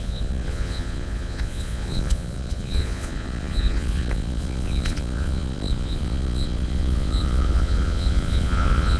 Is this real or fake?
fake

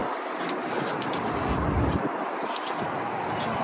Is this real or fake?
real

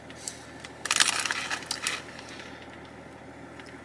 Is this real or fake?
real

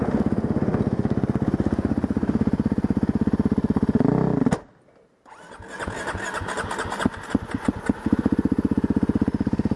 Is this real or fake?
real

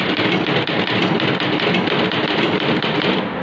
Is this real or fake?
real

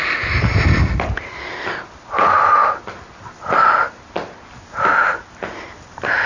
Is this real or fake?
real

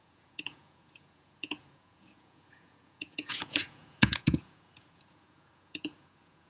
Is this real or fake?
fake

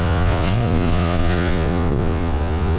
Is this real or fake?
fake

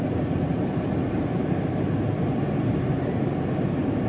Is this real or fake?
real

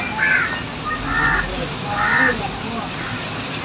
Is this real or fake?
real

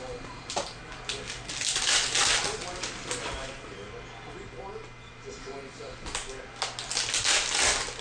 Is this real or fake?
real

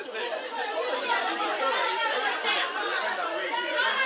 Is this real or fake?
fake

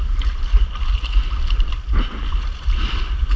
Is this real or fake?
real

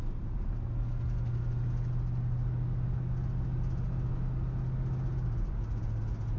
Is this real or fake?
real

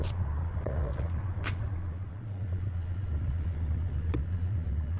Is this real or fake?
fake